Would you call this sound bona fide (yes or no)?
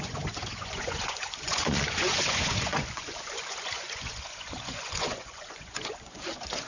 no